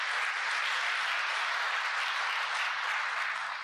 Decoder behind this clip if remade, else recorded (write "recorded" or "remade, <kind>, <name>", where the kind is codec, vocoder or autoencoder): recorded